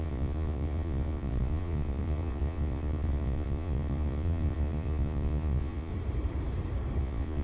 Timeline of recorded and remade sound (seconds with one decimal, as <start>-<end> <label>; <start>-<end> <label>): 0.0-5.9 remade; 5.9-7.0 recorded; 7.0-7.4 remade